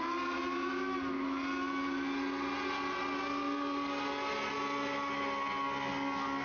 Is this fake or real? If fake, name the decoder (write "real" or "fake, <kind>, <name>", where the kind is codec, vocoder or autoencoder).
real